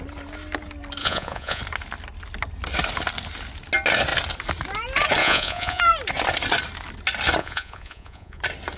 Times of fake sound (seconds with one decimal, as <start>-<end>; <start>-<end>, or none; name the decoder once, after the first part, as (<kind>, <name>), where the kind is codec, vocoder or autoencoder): 1.0-1.6 (vocoder, Vocos); 5.2-5.8; 7.4-8.4